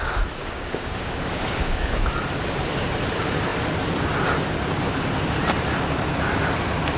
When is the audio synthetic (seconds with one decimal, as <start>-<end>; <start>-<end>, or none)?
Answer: 0.4-2.1